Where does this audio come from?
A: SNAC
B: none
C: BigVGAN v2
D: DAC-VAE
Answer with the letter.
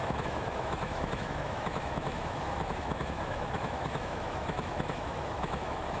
D